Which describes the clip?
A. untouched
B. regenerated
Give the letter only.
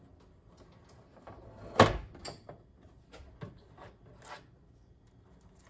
A